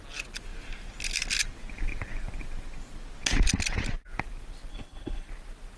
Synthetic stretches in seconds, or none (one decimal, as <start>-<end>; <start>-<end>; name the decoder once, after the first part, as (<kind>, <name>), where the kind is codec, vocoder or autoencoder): 4.7-5.3 (codec, HILCodec)